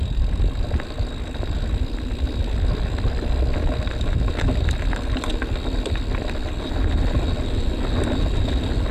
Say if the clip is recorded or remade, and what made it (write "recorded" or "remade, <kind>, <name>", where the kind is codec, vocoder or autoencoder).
recorded